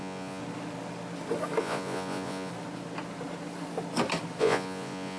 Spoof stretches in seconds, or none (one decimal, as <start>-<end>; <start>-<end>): 0.0-0.4; 1.6-2.5; 4.4-5.2